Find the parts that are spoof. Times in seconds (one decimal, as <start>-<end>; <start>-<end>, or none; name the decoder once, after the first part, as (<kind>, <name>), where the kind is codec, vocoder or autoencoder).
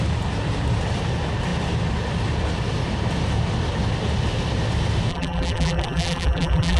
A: 5.1-6.8 (vocoder, BigVGAN v2)